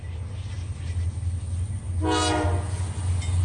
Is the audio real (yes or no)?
yes